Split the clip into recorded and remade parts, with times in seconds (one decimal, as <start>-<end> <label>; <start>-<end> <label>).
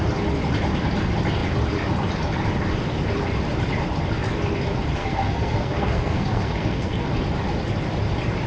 0.0-5.0 recorded; 5.0-7.1 remade; 7.1-8.5 recorded